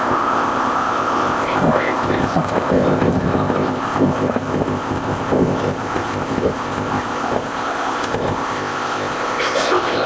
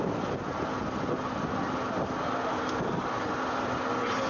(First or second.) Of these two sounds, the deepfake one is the first